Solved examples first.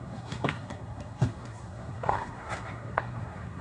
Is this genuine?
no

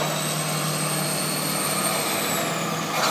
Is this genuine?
yes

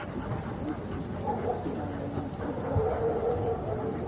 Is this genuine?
yes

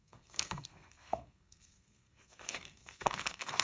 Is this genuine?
no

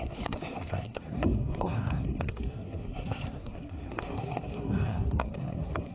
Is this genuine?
no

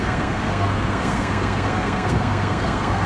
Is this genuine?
no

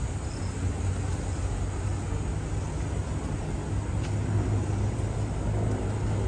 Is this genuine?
yes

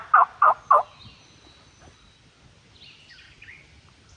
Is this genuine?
yes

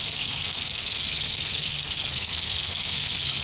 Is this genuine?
no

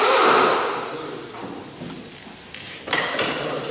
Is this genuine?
yes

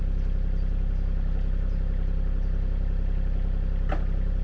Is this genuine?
yes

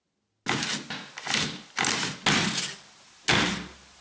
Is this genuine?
yes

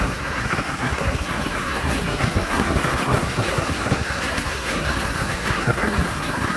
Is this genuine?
no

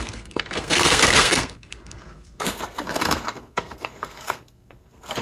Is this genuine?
no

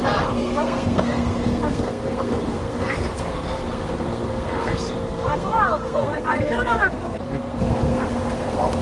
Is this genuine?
no